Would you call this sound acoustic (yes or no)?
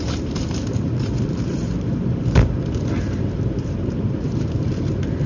no